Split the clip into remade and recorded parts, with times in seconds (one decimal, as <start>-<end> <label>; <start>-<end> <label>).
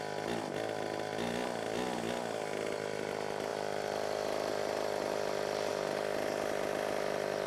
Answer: 0.0-1.4 recorded; 1.4-3.1 remade; 3.1-3.5 recorded; 3.5-5.7 remade; 5.7-7.5 recorded